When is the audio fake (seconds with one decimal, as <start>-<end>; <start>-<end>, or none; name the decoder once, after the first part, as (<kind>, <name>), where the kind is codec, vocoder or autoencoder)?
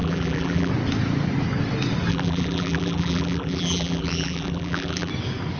0.0-0.7 (vocoder, BigVGAN v2); 2.1-5.1